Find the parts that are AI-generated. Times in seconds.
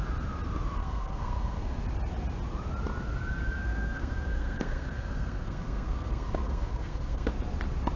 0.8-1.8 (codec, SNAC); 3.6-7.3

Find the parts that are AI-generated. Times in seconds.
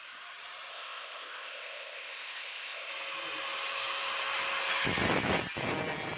0.7-2.9 (codec, ZipCodec)